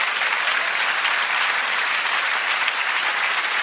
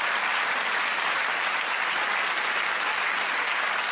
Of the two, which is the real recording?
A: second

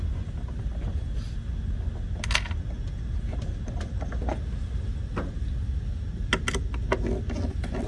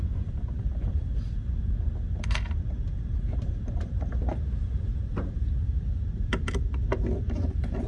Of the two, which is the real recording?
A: first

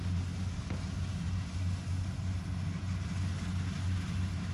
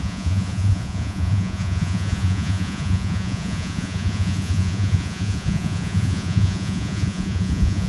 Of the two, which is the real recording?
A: first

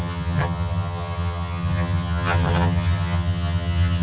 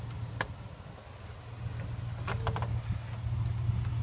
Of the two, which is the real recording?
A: second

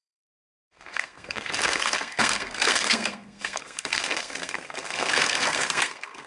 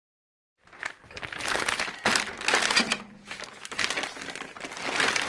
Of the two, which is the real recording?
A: second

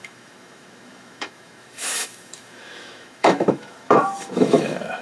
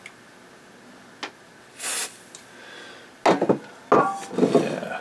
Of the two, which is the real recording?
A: second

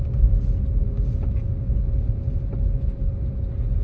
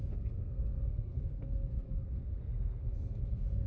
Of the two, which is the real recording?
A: first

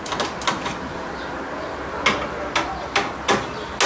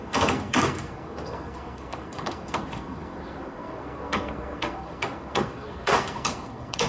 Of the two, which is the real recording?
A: first